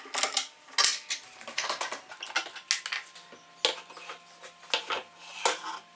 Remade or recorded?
recorded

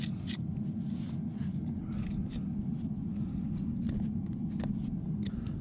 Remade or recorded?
recorded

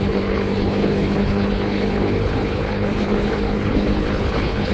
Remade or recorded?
remade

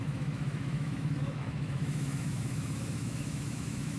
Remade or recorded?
remade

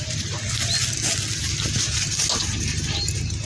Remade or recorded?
recorded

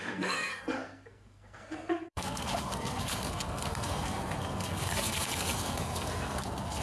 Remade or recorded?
remade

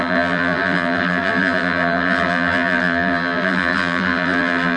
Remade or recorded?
remade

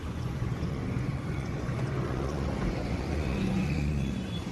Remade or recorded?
remade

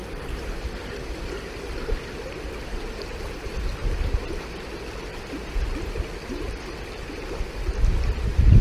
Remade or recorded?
recorded